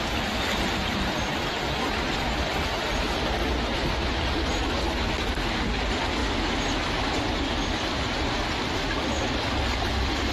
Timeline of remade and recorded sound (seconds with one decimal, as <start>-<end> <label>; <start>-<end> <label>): 0.0-3.4 recorded; 3.4-4.8 remade; 4.8-10.3 recorded